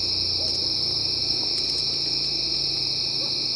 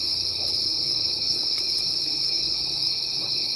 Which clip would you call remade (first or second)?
second